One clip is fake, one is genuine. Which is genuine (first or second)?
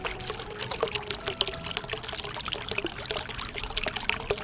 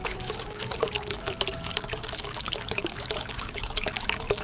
first